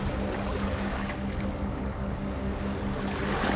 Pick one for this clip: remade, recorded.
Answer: remade